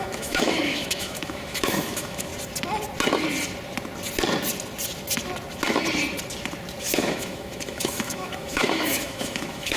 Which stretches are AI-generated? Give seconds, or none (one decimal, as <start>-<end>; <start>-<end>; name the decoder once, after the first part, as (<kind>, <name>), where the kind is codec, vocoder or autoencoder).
0.0-2.3 (autoencoder, DAC-VAE); 6.8-9.8